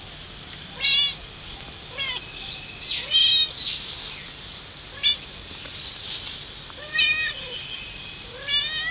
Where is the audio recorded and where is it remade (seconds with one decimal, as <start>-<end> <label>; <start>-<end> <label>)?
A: 0.0-8.9 recorded